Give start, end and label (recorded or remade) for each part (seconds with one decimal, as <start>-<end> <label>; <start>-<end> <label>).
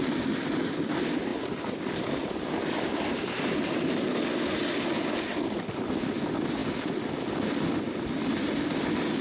0.0-9.2 recorded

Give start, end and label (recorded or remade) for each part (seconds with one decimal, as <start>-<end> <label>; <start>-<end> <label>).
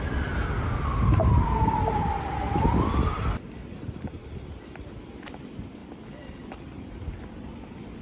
0.0-8.0 recorded